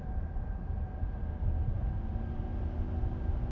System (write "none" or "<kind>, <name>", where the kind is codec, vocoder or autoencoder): none